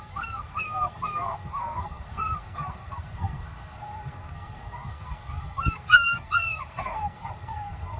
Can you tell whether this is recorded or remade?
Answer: remade